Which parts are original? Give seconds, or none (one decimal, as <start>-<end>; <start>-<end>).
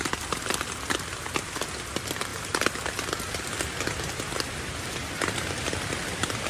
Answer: 2.3-4.5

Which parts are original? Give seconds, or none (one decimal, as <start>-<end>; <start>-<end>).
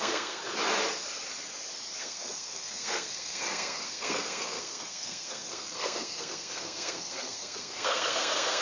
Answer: 0.4-2.0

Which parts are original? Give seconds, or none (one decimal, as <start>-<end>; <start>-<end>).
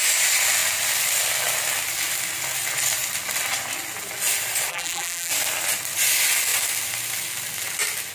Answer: 0.0-4.7; 5.3-8.1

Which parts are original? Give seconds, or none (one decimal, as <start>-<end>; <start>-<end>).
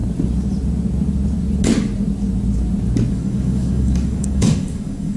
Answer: 0.0-3.1